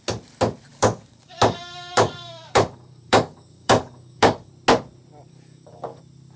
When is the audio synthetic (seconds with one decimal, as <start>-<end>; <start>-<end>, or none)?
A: 0.7-4.5; 5.3-6.0

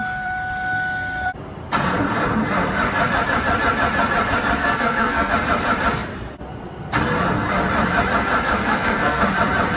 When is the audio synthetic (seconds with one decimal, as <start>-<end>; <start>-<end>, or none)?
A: 4.6-5.3; 8.6-9.2

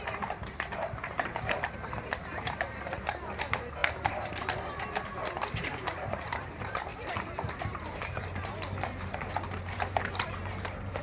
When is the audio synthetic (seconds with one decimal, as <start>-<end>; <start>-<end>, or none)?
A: 0.0-6.9; 7.5-11.0

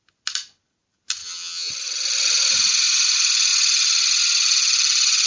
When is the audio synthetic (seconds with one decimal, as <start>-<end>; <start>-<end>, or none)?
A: 1.2-1.7

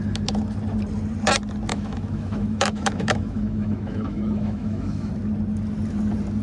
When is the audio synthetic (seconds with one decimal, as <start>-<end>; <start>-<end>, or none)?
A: 1.7-5.1

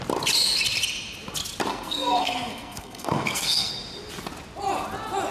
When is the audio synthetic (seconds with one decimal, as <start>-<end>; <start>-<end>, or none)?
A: 1.7-3.7

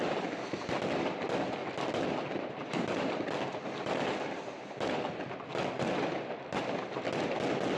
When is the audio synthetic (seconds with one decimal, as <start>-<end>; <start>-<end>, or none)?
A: 0.0-1.6; 2.2-5.5; 7.2-7.8

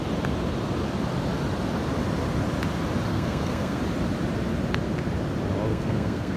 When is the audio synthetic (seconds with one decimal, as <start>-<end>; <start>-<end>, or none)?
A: 3.1-3.8; 5.7-6.4